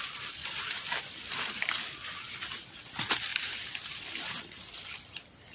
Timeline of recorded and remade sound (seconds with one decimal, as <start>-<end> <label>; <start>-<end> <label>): 0.0-5.5 recorded